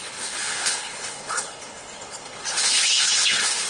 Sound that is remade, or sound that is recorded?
remade